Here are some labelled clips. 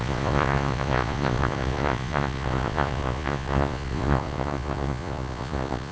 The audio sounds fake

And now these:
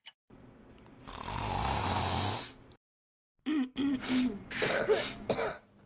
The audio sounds real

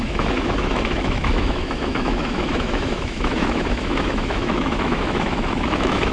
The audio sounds fake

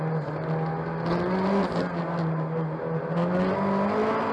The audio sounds real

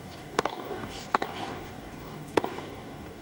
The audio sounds fake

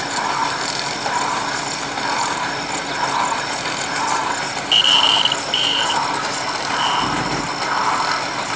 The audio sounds real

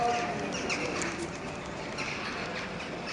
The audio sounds real